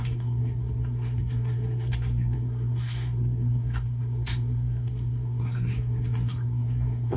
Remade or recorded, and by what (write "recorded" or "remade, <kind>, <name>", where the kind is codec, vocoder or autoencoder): remade, codec, SNAC